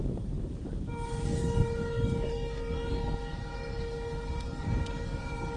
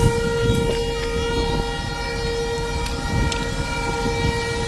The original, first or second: second